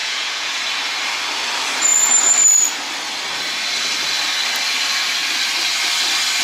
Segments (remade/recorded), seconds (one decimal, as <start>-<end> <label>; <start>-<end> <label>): 0.0-0.6 remade; 0.6-6.4 recorded